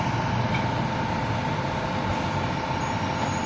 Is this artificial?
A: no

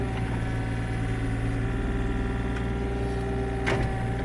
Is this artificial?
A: no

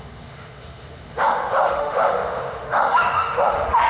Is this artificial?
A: yes